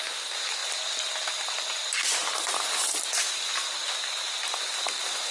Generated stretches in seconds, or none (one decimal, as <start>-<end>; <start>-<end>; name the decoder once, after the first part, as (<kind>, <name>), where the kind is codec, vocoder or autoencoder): 2.8-3.4 (vocoder, BigVGAN v2)